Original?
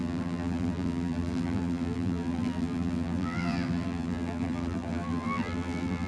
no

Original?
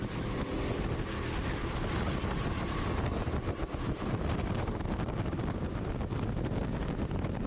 yes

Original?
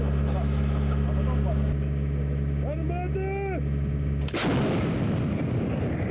yes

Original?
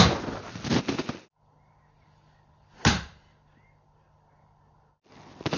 yes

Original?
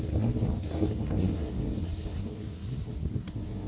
no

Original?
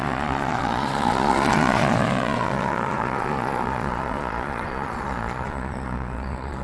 no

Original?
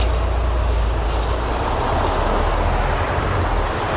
yes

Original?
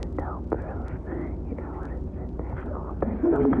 yes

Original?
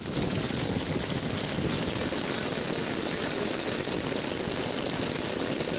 yes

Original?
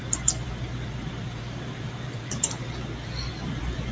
no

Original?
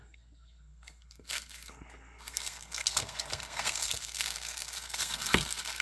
no